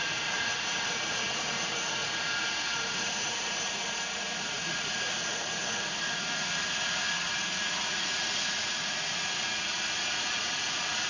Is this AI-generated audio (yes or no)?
yes